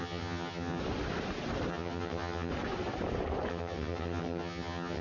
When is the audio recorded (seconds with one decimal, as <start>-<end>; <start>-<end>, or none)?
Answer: 0.8-1.7; 2.5-3.5